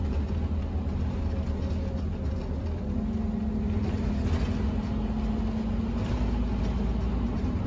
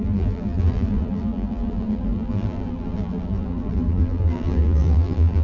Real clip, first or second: first